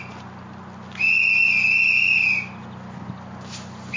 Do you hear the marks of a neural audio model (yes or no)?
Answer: no